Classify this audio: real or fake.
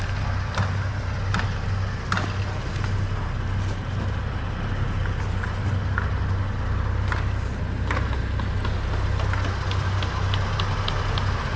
real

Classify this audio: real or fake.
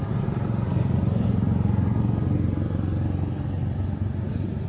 real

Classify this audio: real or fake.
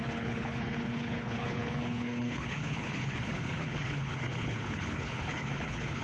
fake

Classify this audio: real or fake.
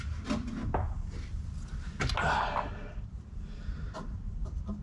real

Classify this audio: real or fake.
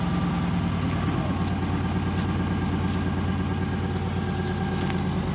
real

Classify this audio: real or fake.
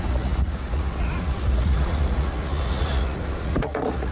fake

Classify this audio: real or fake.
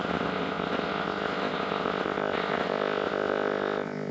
fake